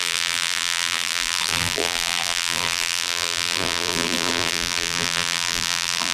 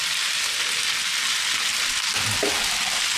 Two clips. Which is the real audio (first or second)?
second